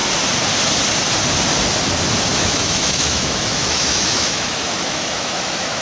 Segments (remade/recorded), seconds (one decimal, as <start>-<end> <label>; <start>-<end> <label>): 0.0-2.3 recorded; 2.3-5.8 remade